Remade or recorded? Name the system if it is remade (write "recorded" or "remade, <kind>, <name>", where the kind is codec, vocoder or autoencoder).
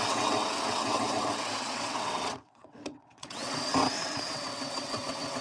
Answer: remade, vocoder, WaveNeXt